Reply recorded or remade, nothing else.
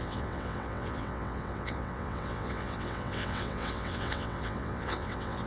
remade